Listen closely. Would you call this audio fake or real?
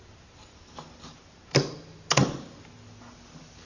real